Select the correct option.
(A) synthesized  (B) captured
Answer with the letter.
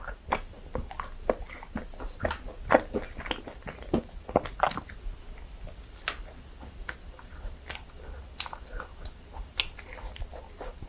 B